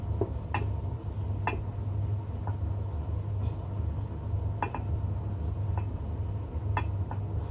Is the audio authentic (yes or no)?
yes